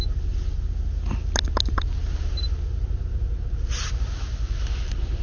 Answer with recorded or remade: recorded